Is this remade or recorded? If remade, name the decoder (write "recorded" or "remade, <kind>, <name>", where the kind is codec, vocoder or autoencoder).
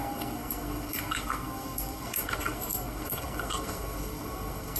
remade, codec, SNAC